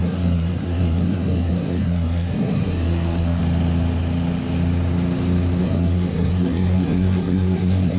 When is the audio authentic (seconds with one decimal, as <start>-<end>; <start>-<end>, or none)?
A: 3.4-5.6